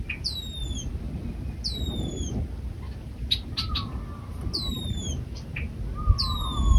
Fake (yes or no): no